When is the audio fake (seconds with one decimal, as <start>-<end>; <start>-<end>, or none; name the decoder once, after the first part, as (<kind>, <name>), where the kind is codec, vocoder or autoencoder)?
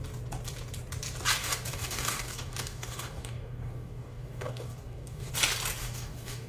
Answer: 1.4-5.3 (codec, DAC); 5.8-6.5